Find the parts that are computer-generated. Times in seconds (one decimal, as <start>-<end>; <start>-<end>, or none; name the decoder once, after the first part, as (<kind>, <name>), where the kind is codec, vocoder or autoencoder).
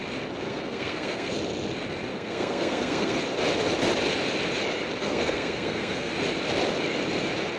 0.5-1.3 (codec, SNAC); 2.1-3.2; 5.0-6.1